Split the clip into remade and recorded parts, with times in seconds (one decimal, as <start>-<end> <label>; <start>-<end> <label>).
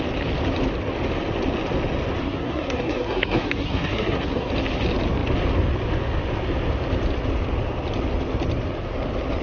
0.0-2.2 recorded; 2.2-4.5 remade; 4.5-9.4 recorded